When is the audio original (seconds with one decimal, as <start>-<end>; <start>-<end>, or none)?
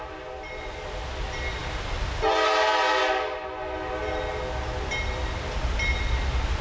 0.0-6.6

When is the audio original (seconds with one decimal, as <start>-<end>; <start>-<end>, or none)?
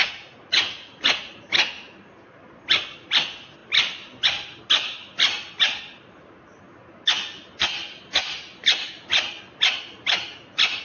2.1-10.8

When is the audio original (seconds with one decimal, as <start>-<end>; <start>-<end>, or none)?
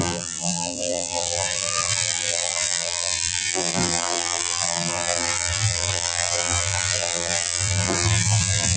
none